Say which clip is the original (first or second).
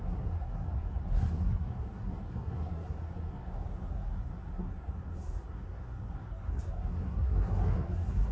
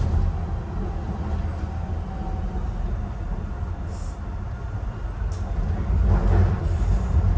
second